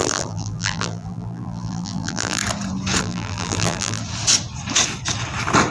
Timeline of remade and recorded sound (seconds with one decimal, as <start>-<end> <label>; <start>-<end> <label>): 0.0-2.4 remade; 2.4-3.0 recorded; 3.0-4.0 remade; 4.0-5.7 recorded